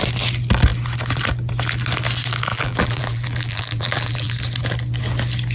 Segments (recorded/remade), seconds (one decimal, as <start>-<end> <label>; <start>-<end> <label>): 0.0-2.5 recorded; 2.5-4.3 remade; 4.3-5.5 recorded